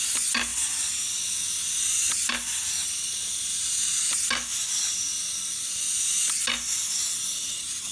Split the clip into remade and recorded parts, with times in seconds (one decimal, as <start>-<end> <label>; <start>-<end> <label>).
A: 0.0-7.9 recorded